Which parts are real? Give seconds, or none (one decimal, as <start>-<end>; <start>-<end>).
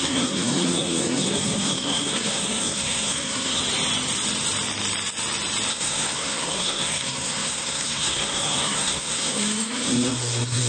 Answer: 3.6-5.7